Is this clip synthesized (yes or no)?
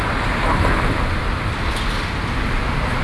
no